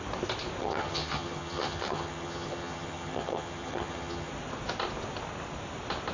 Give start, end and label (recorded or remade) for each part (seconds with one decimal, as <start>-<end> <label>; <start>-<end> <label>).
0.0-0.6 recorded; 0.6-4.3 remade; 4.3-6.1 recorded

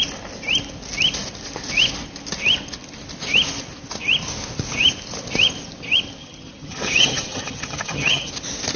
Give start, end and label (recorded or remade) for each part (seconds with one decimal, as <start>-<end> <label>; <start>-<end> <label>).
0.0-6.2 recorded; 6.2-8.3 remade; 8.3-8.8 recorded

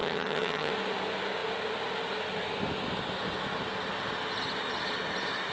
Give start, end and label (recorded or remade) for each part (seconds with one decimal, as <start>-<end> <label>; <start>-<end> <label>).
0.0-0.7 remade; 0.7-5.5 recorded

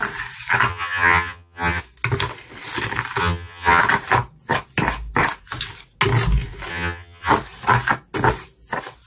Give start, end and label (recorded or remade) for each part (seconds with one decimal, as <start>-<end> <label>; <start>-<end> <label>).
0.0-0.7 recorded; 0.7-1.8 remade; 1.8-3.2 recorded; 3.2-3.8 remade; 3.8-6.7 recorded; 6.7-7.3 remade; 7.3-9.1 recorded

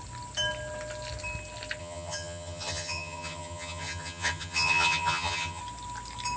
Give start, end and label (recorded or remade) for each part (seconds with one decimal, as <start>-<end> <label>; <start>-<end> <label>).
0.0-1.8 recorded; 1.8-5.6 remade; 5.6-6.4 recorded

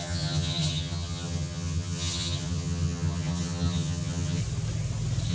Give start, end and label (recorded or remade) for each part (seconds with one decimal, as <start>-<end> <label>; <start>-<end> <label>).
0.0-4.4 remade; 4.4-5.3 recorded

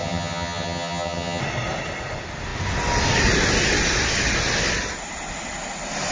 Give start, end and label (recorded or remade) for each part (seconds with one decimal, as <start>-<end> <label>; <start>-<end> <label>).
0.0-1.4 remade; 1.4-6.1 recorded

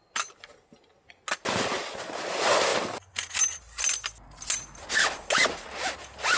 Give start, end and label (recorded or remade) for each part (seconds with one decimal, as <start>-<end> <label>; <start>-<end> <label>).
0.0-6.4 recorded